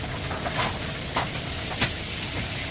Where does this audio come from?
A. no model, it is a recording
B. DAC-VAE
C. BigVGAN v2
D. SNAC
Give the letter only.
A